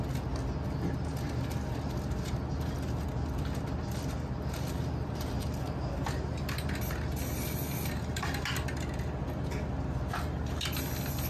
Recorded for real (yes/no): yes